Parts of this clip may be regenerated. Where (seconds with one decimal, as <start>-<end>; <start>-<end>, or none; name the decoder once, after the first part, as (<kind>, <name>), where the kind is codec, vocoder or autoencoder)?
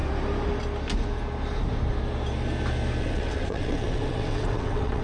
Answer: 3.0-5.0 (vocoder, WaveNeXt)